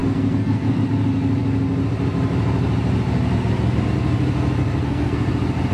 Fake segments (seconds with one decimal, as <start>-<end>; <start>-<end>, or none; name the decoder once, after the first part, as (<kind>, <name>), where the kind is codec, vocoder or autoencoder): 0.0-0.8 (codec, SNAC); 4.8-5.3